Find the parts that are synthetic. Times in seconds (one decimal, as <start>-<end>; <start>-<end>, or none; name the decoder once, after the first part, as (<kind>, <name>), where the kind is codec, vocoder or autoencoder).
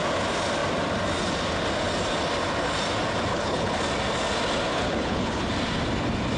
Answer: 3.3-3.8 (codec, HILCodec); 4.7-5.5